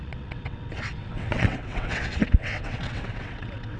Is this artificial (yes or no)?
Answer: yes